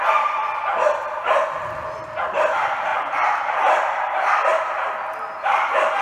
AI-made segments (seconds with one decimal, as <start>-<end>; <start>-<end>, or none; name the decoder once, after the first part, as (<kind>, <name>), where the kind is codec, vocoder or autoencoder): none